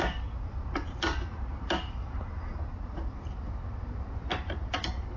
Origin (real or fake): real